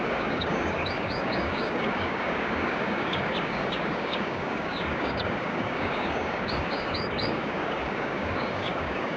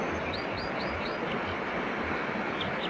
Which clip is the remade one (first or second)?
first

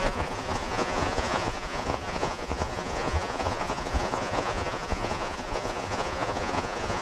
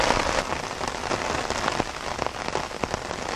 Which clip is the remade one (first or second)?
first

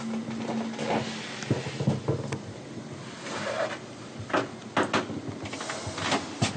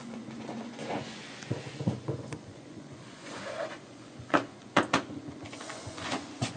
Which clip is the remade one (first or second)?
second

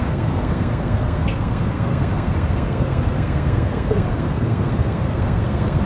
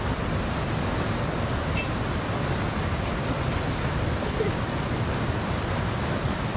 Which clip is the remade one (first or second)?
first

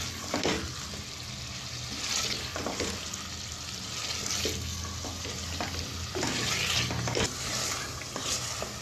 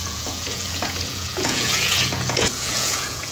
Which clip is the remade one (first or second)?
second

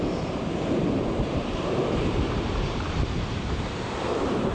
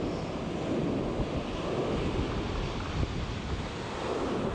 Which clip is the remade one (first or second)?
first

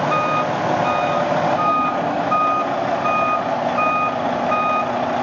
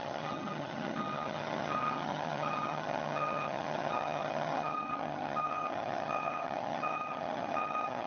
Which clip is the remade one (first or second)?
second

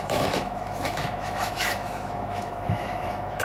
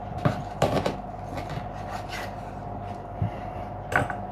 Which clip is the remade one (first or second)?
first